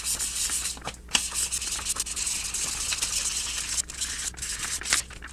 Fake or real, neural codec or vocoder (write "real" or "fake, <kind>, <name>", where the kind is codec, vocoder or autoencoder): real